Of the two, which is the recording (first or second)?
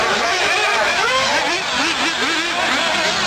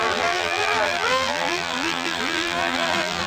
first